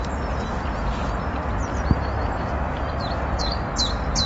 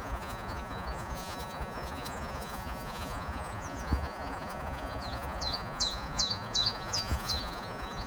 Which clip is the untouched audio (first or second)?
first